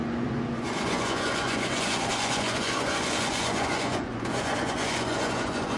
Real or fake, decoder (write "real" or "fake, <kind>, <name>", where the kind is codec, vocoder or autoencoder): fake, vocoder, Vocos